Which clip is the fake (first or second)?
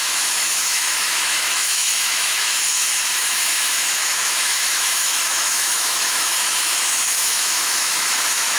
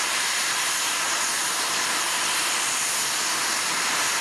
first